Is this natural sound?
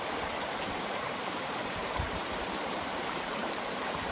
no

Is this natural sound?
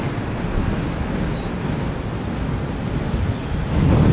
yes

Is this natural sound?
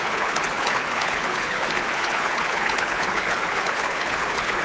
no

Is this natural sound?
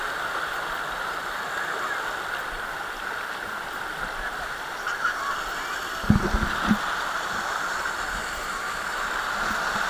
yes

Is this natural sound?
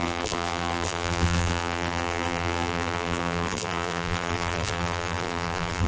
no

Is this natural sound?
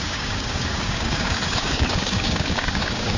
no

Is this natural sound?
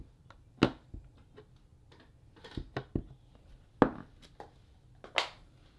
yes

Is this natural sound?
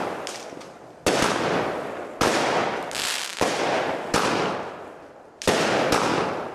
yes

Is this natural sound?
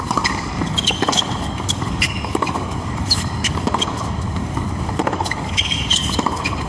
no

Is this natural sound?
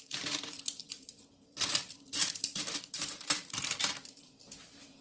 no